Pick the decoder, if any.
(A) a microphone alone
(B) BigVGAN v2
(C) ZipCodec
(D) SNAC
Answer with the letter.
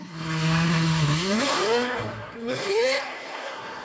D